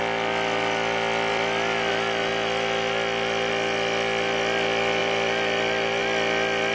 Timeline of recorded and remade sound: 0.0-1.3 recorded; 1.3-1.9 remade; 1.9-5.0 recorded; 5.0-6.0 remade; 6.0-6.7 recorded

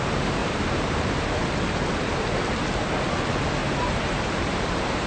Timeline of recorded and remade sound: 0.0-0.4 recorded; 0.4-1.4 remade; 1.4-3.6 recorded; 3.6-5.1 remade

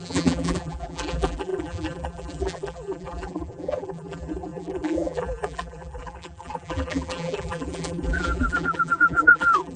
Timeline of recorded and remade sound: 0.0-9.8 remade